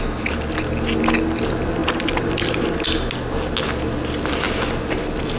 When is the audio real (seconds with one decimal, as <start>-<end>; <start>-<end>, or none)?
0.0-5.4